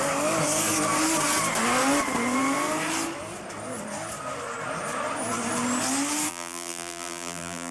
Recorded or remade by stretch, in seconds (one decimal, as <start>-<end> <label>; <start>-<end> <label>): 0.0-6.3 recorded; 6.3-7.7 remade